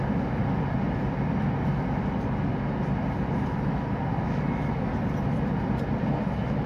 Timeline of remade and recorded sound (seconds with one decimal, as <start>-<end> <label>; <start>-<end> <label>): 0.0-0.4 remade; 0.4-4.2 recorded; 4.2-4.9 remade; 4.9-6.3 recorded; 6.3-6.7 remade